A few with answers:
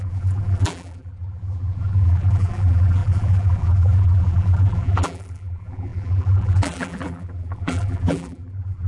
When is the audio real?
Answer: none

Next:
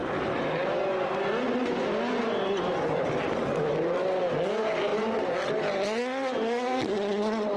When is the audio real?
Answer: 0.0-7.6

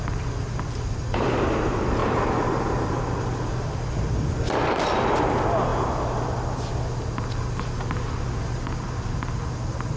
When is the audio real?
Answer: 0.0-2.0; 3.0-10.0

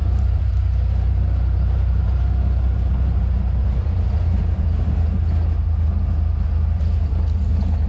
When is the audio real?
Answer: 0.5-7.9

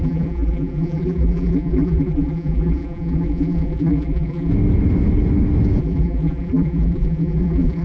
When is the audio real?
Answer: 4.5-5.8

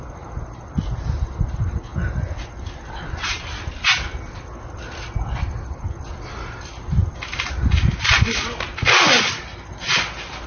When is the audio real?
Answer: 0.0-10.5